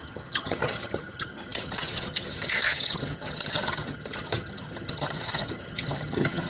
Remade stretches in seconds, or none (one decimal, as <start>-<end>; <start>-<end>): 0.0-6.5